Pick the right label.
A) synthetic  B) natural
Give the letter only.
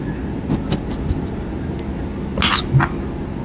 B